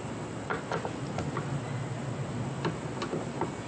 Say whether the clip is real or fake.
real